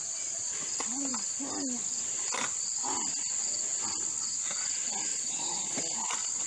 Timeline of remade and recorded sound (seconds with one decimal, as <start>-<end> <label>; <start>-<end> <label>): 0.0-5.1 recorded; 5.1-5.8 remade; 5.8-6.5 recorded